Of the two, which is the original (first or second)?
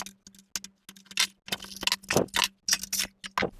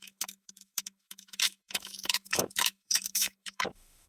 first